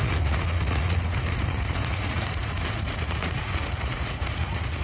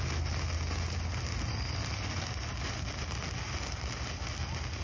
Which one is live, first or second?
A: second